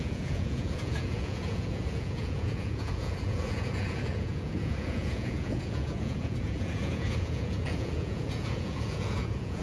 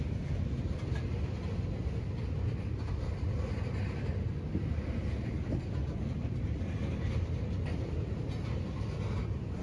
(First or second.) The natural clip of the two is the second